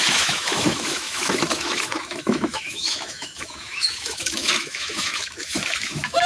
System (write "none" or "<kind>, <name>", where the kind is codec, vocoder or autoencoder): autoencoder, DAC-VAE